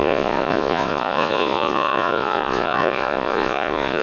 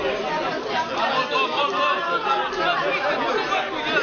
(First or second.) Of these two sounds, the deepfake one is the first